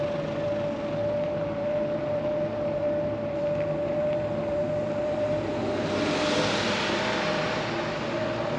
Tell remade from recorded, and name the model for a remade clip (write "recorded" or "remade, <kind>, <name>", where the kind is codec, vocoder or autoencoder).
recorded